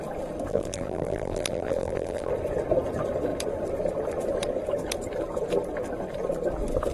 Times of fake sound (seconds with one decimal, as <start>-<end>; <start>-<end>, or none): 0.5-2.3